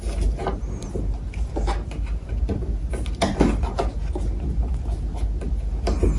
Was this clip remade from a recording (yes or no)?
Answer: no